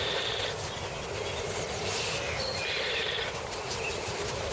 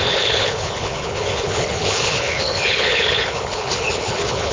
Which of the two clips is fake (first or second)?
second